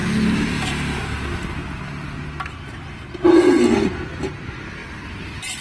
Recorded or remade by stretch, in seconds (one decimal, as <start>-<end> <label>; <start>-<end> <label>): 0.0-4.8 recorded; 4.8-5.6 remade